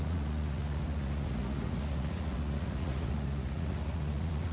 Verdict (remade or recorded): remade